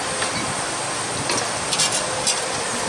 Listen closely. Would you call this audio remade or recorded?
remade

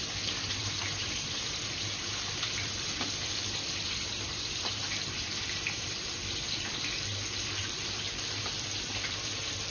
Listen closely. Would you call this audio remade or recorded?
remade